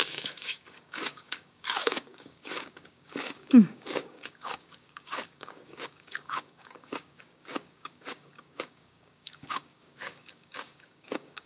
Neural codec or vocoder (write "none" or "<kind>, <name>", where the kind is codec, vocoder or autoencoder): codec, DAC